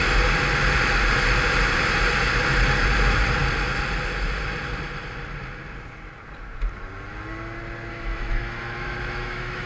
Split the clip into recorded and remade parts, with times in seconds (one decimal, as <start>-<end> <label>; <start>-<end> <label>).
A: 0.0-7.9 recorded; 7.9-9.7 remade